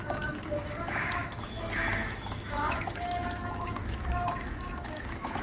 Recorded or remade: remade